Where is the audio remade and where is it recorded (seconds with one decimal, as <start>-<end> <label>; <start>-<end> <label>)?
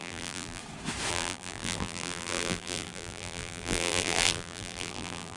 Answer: 0.0-0.6 remade; 0.6-1.1 recorded; 1.1-5.4 remade